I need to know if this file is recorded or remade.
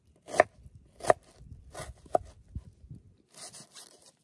recorded